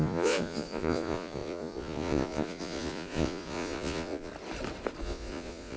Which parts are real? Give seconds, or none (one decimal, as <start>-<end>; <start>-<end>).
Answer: 4.3-5.0